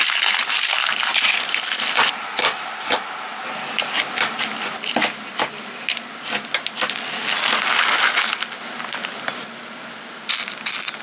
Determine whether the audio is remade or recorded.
recorded